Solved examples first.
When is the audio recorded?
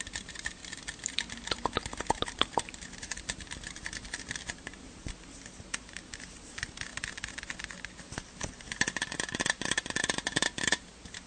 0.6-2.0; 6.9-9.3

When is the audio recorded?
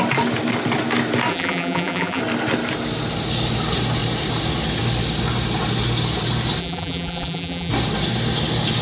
0.0-1.3; 2.2-6.6; 7.7-8.8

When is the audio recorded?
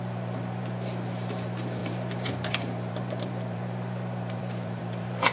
none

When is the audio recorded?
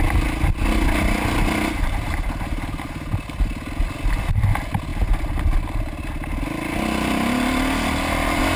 0.0-8.6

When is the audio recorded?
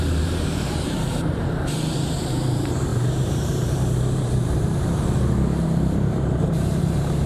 none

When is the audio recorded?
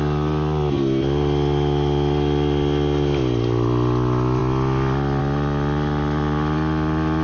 0.0-7.2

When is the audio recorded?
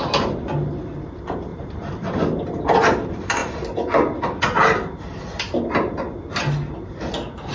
0.0-1.5; 2.2-7.5